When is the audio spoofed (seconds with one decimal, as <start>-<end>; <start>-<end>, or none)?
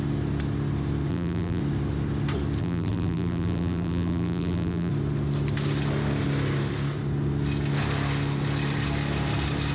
1.1-1.6; 2.6-4.9